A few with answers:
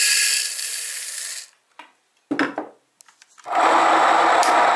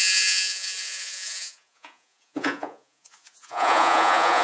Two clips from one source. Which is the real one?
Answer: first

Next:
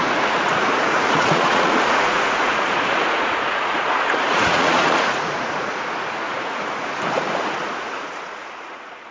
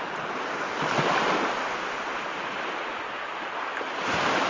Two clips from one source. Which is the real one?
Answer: second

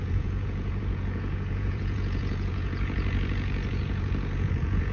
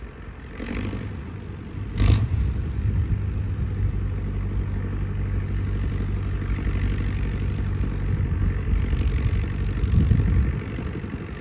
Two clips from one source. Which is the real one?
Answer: second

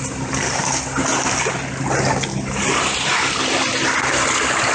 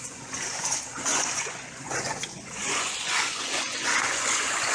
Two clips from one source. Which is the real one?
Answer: first